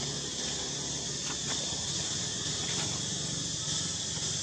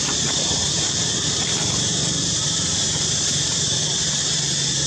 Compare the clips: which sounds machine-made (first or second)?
second